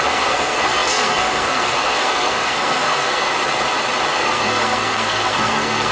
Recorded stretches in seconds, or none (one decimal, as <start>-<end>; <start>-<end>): 3.3-4.1